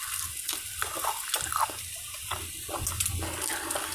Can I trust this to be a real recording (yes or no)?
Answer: yes